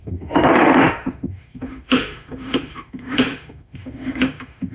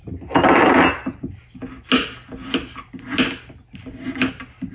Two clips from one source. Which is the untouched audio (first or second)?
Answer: second